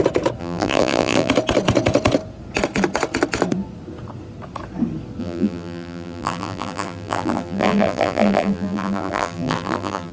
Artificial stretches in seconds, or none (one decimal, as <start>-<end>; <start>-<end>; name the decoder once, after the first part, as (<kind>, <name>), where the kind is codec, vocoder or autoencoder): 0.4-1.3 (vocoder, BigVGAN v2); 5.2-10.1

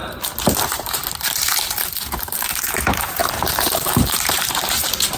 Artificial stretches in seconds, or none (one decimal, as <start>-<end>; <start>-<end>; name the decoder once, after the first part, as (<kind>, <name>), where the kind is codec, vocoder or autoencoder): 0.9-1.5 (vocoder, BigVGAN v2); 2.6-5.2

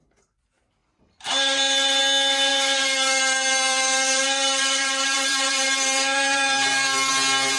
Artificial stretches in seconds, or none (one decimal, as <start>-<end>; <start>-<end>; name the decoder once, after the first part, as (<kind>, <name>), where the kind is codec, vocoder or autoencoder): 0.8-2.0 (vocoder, BigVGAN v2); 2.5-7.1

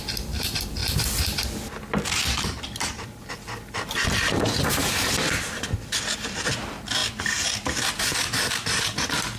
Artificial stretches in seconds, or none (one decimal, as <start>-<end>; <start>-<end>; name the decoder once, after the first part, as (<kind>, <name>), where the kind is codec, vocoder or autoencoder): 0.0-0.8 (vocoder, BigVGAN v2); 2.2-9.4